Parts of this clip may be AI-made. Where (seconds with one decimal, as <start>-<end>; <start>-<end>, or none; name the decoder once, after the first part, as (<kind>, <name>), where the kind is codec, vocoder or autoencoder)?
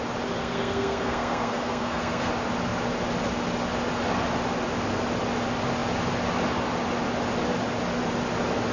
0.4-2.3 (codec, SNAC)